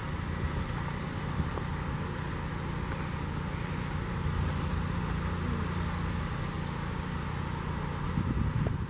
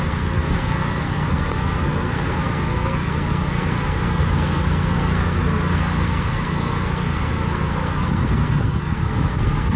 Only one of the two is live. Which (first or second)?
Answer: first